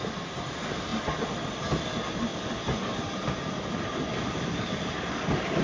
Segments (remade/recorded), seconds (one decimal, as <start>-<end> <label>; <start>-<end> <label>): 0.0-5.6 recorded